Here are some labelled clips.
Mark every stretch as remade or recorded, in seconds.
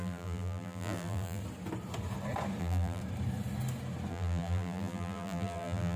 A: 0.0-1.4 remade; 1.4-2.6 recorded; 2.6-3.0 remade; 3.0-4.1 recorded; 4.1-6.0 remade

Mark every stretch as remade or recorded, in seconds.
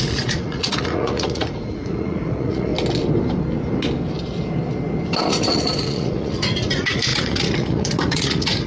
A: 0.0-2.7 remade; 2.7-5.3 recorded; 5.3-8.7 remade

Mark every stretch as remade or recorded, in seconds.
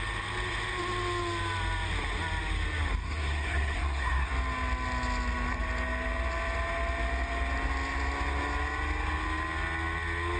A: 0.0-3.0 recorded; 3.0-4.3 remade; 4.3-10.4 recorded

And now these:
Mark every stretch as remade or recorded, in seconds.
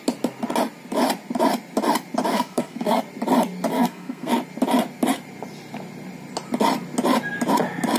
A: 0.0-2.3 recorded; 2.3-3.0 remade; 3.0-3.7 recorded; 3.7-4.3 remade; 4.3-8.0 recorded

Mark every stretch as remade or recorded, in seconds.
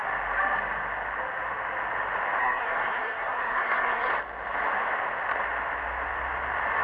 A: 0.0-2.4 recorded; 2.4-4.1 remade; 4.1-6.8 recorded